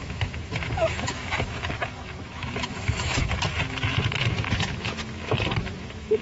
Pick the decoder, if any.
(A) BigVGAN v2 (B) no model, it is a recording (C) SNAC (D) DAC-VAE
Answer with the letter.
D